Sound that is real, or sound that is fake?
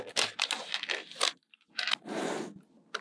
real